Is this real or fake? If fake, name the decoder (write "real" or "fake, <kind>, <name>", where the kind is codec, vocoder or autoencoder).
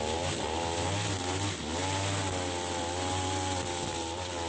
real